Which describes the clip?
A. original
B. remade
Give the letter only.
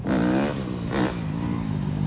A